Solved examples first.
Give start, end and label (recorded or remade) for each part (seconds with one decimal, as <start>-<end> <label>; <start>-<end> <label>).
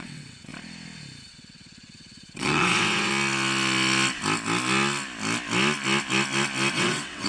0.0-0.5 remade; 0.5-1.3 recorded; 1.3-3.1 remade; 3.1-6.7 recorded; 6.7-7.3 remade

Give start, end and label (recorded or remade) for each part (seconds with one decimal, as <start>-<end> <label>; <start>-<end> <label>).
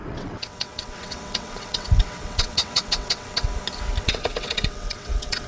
0.0-3.5 remade; 3.5-4.0 recorded; 4.0-5.5 remade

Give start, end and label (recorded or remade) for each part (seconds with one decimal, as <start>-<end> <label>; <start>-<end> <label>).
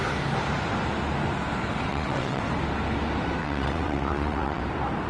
0.0-1.9 recorded; 1.9-2.4 remade; 2.4-3.4 recorded; 3.4-4.6 remade; 4.6-5.1 recorded